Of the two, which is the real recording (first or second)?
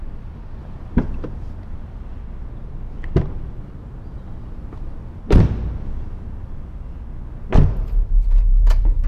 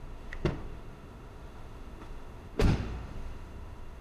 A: first